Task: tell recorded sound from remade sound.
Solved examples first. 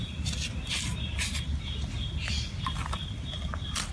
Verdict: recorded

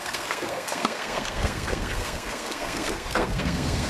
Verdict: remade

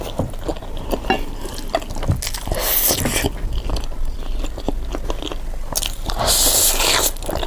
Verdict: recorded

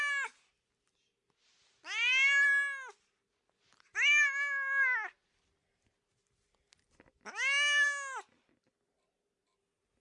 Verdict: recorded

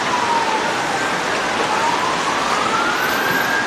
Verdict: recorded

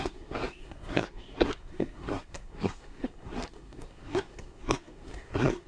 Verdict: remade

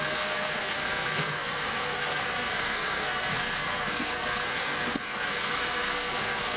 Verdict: remade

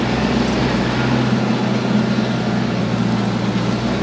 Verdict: recorded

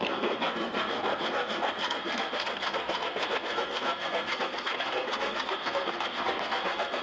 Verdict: remade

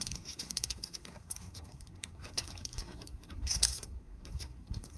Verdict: remade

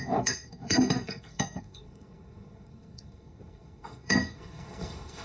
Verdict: remade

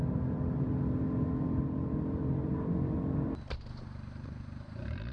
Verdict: recorded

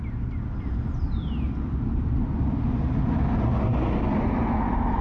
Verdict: recorded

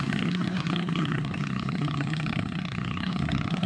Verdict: remade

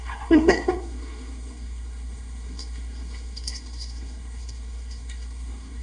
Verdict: remade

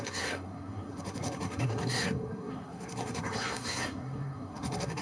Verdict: remade